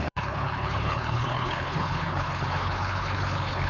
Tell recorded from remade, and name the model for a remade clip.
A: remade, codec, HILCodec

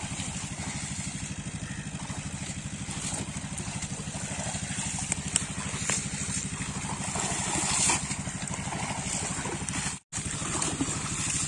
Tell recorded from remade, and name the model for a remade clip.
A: recorded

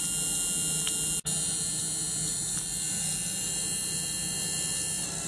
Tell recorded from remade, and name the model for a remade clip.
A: recorded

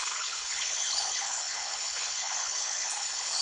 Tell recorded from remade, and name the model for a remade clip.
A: remade, codec, HILCodec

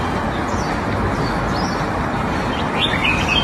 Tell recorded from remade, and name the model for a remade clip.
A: recorded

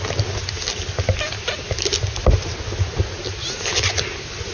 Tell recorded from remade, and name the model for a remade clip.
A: recorded